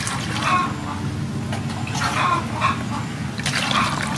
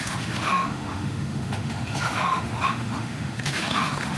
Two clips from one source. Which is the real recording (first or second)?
first